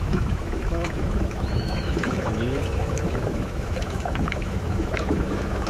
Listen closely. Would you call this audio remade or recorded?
remade